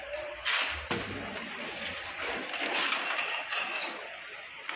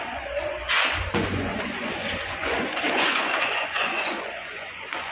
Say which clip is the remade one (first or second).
second